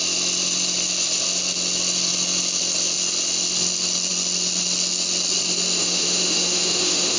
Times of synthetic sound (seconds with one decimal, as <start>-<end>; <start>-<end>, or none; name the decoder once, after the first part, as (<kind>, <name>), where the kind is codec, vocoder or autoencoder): 5.8-7.2 (autoencoder, DAC-VAE)